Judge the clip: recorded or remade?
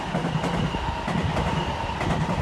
recorded